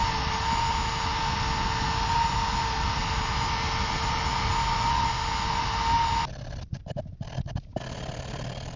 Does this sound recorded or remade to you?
recorded